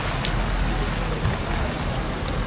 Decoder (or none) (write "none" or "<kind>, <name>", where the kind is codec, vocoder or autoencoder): none